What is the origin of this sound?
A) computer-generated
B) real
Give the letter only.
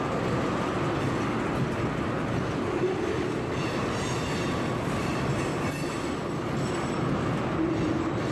B